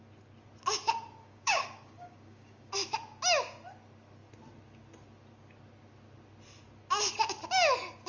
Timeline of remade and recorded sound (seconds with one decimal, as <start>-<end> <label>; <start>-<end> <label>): 0.0-1.2 recorded; 1.2-2.7 remade; 2.7-8.1 recorded